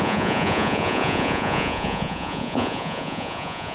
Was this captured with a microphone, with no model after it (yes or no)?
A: no